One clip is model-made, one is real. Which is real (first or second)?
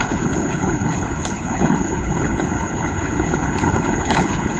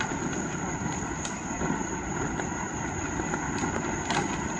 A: second